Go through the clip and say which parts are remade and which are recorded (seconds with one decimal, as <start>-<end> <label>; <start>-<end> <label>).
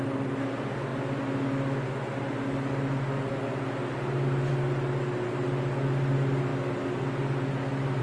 0.0-8.0 recorded